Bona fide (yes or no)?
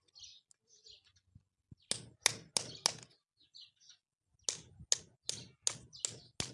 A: yes